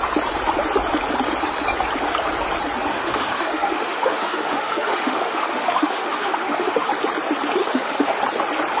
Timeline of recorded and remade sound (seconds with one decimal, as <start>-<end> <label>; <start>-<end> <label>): 0.0-2.9 recorded; 2.9-6.9 remade; 6.9-7.6 recorded; 7.6-8.2 remade; 8.2-8.8 recorded